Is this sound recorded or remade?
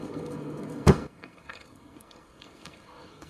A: remade